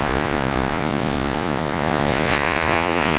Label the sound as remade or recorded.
remade